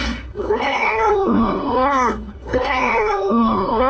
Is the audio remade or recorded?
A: remade